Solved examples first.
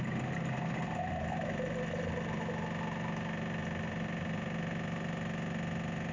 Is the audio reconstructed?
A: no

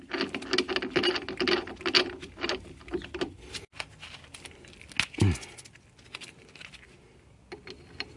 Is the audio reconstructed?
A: no